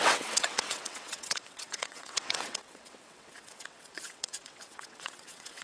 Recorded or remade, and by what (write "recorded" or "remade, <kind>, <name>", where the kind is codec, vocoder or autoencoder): remade, vocoder, WaveNeXt